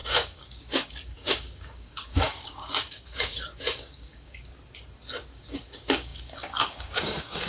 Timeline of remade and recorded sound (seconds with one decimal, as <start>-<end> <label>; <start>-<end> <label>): 0.0-4.5 remade; 4.5-5.3 recorded; 5.3-7.5 remade